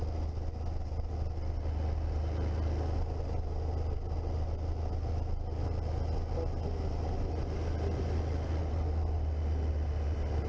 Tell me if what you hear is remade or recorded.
recorded